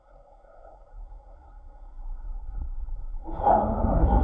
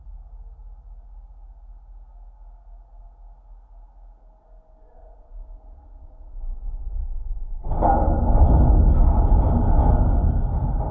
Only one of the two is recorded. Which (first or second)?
second